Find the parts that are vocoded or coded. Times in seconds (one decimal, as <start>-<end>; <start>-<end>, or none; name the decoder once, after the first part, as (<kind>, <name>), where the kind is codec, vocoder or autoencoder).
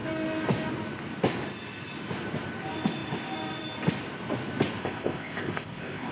4.8-6.1 (codec, ZipCodec)